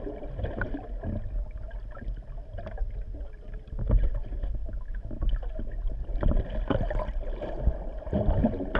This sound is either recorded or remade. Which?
recorded